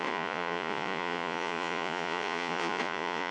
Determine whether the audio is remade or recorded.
remade